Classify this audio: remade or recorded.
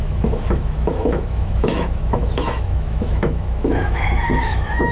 remade